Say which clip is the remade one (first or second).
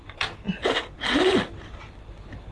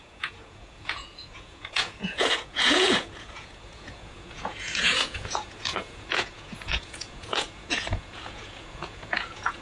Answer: second